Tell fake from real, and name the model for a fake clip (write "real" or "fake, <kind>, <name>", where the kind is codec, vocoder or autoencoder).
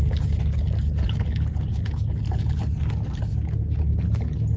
real